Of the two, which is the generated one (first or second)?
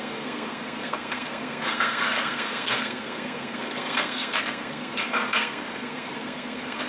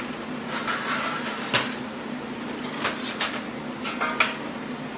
first